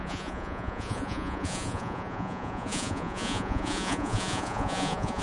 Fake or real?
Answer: fake